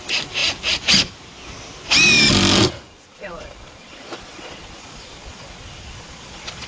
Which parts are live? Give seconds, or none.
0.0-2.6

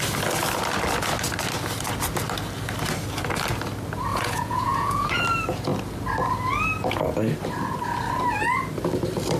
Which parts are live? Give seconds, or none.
0.0-4.1; 5.2-9.4

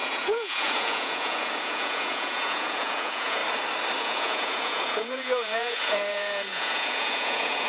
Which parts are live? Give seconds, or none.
3.4-4.0